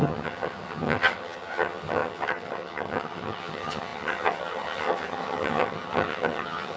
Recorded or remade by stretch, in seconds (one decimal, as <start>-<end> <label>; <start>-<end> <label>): 0.0-6.8 remade

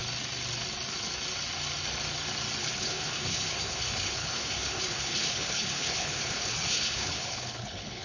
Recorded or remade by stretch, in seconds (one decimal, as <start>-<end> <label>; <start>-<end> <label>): 0.0-2.6 recorded; 2.6-8.0 remade

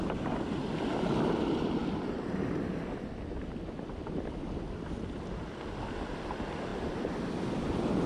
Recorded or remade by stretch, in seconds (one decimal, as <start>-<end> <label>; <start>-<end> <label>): 0.0-8.1 recorded

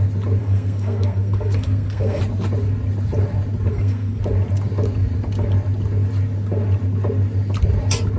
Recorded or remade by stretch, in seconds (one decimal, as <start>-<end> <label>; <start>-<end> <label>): 0.0-0.4 recorded; 0.4-2.2 remade; 2.2-3.7 recorded; 3.7-4.2 remade; 4.2-8.2 recorded

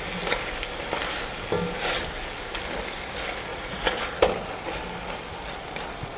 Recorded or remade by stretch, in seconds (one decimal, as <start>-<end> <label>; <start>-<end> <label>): 0.0-3.5 recorded; 3.5-4.0 remade; 4.0-6.2 recorded

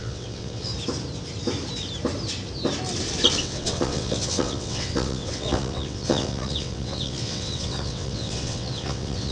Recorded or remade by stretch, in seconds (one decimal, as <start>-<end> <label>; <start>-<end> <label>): 0.0-0.7 remade; 0.7-3.4 recorded; 3.4-9.3 remade

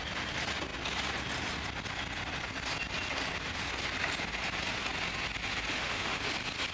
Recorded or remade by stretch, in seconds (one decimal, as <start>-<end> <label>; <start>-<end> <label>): 0.0-5.7 recorded; 5.7-6.2 remade; 6.2-6.7 recorded